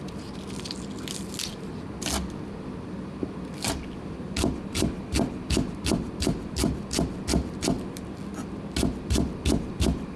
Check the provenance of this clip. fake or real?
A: real